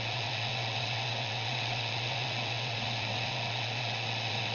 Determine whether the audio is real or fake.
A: fake